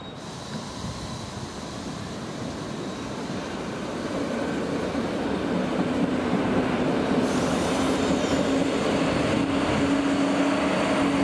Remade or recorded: recorded